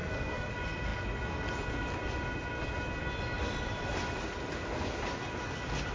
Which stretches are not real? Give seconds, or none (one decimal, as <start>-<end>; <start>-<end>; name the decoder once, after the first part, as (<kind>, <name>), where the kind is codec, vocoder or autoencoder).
0.0-0.5 (codec, SNAC)